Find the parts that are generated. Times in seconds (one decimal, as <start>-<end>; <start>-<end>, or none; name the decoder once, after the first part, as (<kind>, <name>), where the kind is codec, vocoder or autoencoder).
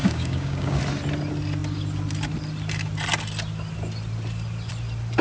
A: 0.0-0.8 (codec, DAC)